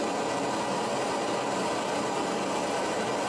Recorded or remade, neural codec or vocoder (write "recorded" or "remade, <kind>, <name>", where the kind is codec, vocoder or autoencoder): recorded